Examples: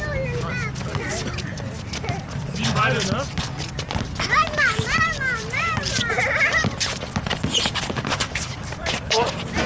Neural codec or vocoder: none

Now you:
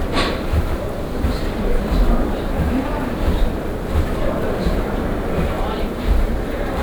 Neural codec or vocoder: vocoder, BigVGAN v2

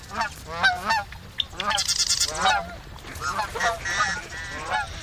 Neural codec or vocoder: none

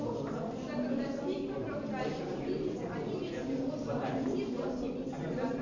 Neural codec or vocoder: none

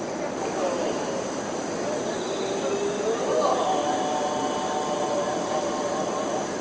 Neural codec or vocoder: none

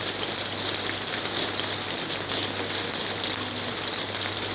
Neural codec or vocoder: none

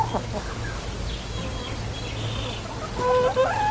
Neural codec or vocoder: none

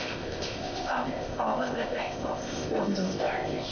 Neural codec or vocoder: codec, ZipCodec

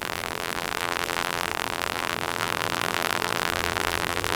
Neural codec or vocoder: vocoder, BigVGAN v2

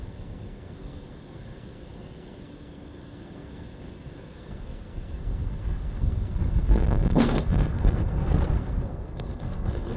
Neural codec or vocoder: codec, SNAC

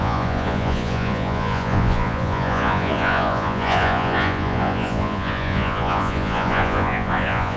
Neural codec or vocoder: vocoder, Vocos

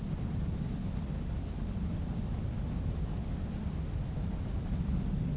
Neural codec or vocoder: none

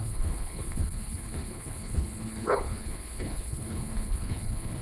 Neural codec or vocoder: codec, HILCodec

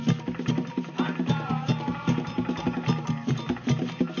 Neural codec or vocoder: none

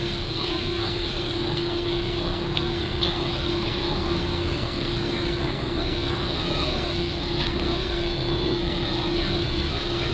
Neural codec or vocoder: codec, SNAC